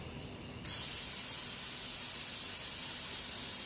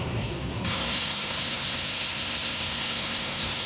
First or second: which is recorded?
first